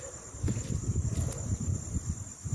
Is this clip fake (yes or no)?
no